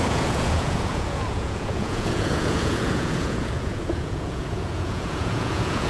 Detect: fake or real fake